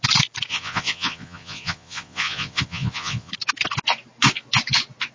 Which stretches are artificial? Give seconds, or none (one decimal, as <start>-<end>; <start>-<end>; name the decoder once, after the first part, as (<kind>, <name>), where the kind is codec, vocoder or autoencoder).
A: 0.5-3.3 (vocoder, Vocos)